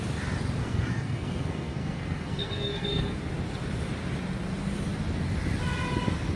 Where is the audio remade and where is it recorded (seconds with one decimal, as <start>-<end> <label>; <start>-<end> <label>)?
0.0-0.6 recorded; 0.6-3.2 remade; 3.2-6.4 recorded